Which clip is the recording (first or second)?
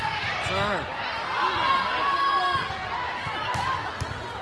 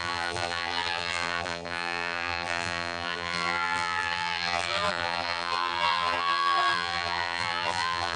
first